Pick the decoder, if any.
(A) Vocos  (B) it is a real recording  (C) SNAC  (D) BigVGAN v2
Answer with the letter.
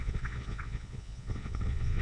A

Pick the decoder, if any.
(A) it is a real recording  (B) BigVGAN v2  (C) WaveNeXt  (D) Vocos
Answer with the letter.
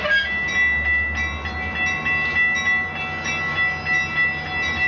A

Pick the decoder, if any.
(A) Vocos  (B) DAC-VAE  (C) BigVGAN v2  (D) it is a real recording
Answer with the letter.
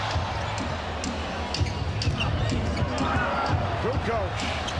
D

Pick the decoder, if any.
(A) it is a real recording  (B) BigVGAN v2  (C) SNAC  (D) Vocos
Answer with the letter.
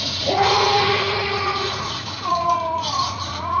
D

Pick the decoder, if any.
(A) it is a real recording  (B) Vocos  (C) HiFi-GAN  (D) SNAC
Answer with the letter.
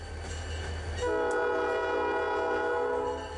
A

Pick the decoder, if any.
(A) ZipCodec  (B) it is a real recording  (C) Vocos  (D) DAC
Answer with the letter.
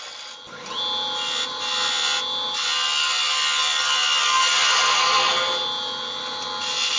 B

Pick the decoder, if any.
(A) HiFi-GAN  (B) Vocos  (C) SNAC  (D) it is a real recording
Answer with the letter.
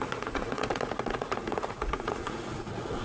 B